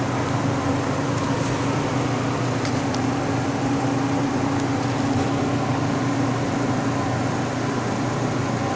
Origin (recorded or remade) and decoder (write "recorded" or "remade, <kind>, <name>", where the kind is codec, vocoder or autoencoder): recorded